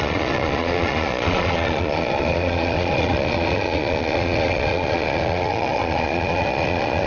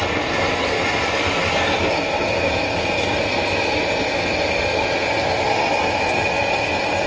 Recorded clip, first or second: second